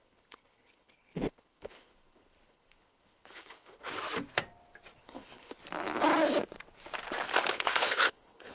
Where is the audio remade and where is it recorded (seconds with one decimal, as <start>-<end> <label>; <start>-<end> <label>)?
0.0-3.9 remade; 3.9-5.0 recorded; 5.0-5.6 remade; 5.6-7.5 recorded; 7.5-8.5 remade